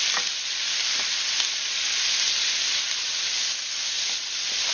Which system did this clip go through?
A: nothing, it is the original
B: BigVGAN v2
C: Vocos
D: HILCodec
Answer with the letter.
B